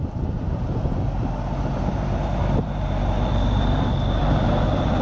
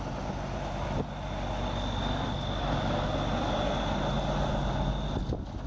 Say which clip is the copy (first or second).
first